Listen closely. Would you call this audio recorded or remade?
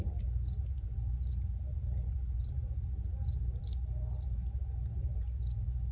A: remade